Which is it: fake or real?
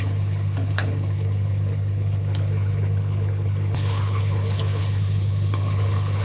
fake